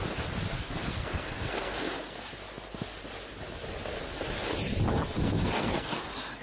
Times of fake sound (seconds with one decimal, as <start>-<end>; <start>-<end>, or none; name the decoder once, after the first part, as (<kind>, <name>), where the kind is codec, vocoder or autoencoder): 0.5-2.3 (codec, SNAC); 4.9-5.9

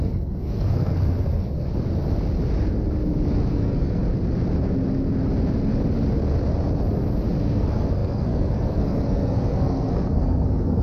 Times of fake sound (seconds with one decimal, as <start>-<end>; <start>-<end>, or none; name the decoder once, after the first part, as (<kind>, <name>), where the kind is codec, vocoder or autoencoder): 0.0-1.7 (codec, SNAC); 3.5-4.0; 7.4-10.8

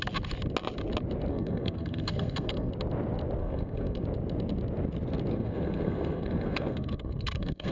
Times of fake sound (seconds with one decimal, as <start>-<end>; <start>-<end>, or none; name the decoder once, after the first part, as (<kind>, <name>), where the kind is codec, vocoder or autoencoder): 1.3-2.7 (codec, SNAC); 3.4-4.0; 5.3-7.7

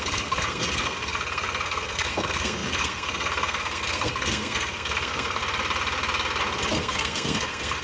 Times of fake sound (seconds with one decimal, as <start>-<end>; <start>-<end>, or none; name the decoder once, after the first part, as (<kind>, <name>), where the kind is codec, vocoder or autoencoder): 0.0-5.4 (codec, SNAC); 6.8-7.8

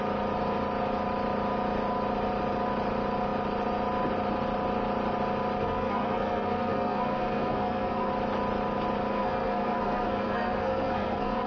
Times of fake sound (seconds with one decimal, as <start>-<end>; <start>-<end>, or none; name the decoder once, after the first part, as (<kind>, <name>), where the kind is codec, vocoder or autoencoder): 5.6-8.1 (codec, SNAC); 9.1-11.5